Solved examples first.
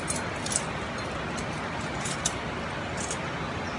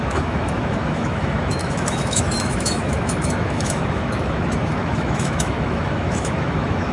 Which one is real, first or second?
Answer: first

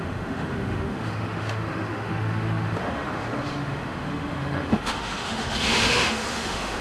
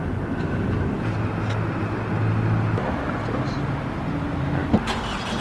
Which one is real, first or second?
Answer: second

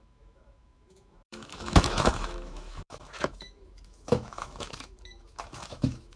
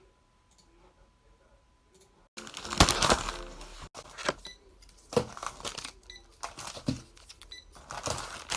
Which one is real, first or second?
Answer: second